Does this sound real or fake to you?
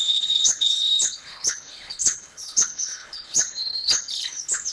fake